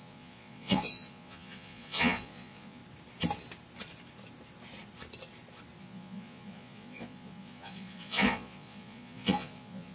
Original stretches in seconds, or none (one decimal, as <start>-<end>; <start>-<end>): 2.8-5.8